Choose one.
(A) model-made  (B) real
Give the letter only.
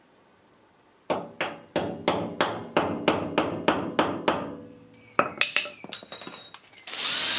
B